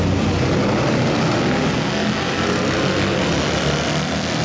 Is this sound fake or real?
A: real